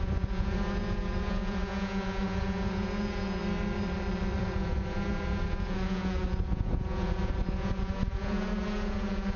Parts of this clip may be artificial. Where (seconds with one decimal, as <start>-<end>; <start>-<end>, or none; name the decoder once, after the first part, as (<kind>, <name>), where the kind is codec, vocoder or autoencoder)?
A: 0.0-3.4 (vocoder, Vocos); 4.4-9.4